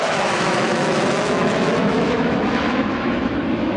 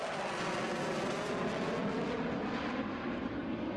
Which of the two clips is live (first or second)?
second